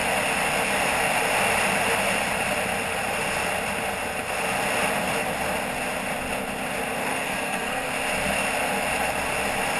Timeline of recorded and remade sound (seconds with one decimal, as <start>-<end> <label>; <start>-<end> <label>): 0.0-7.0 recorded; 7.0-7.9 remade; 7.9-9.8 recorded